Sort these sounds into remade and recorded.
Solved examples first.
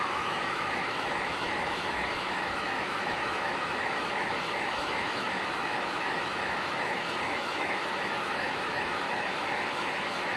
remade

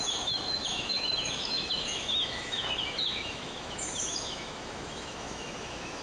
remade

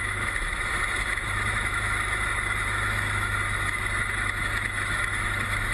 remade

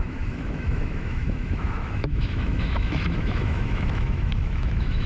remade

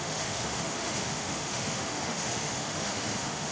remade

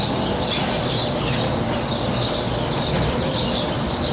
recorded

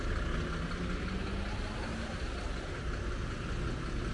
recorded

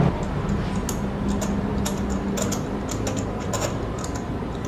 recorded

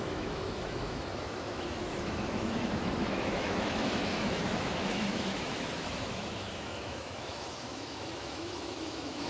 remade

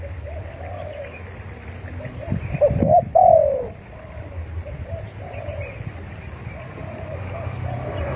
recorded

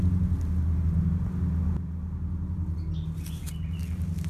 recorded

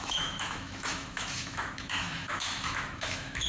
remade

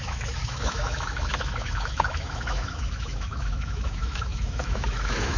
remade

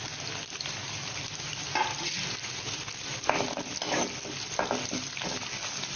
recorded